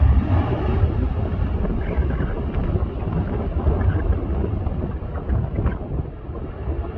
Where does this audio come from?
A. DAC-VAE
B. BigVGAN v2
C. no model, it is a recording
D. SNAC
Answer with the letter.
C